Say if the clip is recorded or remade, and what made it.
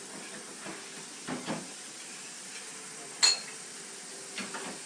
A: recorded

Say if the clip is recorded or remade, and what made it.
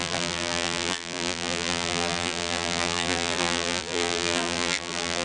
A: remade, vocoder, BigVGAN v2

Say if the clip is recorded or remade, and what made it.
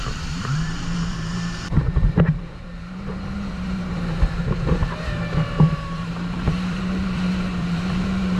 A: remade, vocoder, BigVGAN v2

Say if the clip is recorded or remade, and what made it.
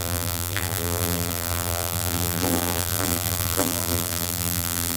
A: remade, vocoder, BigVGAN v2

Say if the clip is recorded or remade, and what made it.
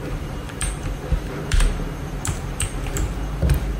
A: remade, vocoder, BigVGAN v2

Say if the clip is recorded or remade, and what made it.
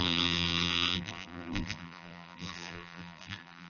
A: remade, vocoder, BigVGAN v2